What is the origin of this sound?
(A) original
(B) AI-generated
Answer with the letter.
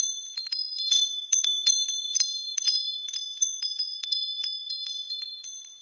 B